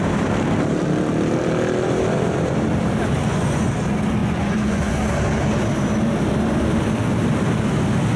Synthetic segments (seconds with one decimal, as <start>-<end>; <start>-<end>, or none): 3.2-3.7; 4.2-5.0